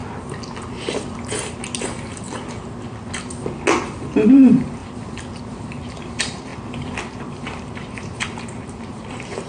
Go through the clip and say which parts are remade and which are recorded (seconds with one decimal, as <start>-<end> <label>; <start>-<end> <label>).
0.0-4.3 recorded; 4.3-4.8 remade; 4.8-5.4 recorded; 5.4-6.5 remade; 6.5-7.3 recorded; 7.3-9.5 remade

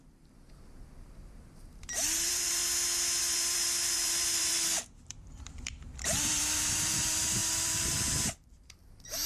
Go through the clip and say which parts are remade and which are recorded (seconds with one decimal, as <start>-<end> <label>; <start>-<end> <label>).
0.0-2.6 remade; 2.6-3.2 recorded; 3.2-9.3 remade